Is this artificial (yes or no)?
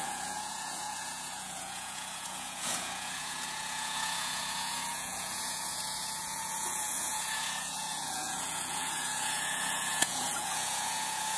yes